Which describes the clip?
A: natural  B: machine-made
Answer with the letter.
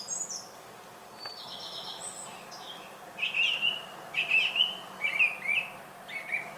A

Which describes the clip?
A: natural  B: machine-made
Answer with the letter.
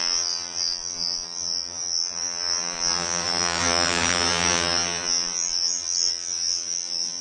B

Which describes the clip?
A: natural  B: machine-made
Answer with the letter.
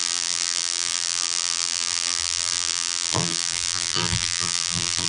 B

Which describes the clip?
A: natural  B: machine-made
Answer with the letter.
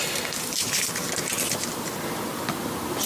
A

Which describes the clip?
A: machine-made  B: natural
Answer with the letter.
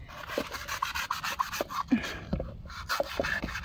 B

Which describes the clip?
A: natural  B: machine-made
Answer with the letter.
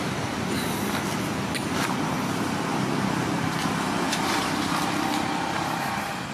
B